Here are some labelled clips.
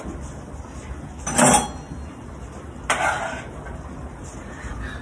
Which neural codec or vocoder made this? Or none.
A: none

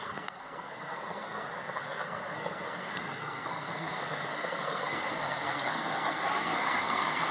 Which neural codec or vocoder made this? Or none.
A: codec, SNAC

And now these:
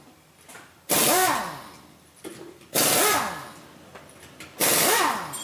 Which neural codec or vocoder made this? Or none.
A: none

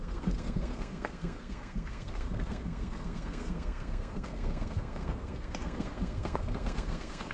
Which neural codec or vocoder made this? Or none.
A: codec, SNAC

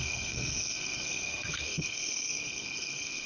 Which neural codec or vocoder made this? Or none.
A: codec, SNAC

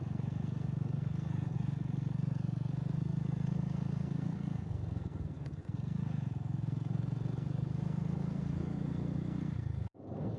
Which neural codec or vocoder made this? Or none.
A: codec, SNAC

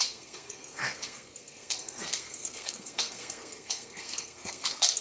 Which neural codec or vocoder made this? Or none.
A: codec, SNAC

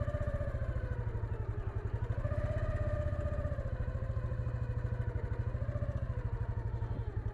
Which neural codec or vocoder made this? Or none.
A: none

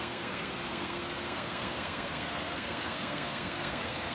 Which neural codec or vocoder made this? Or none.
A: codec, SNAC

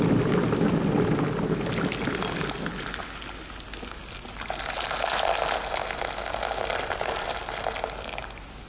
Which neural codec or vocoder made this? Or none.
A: none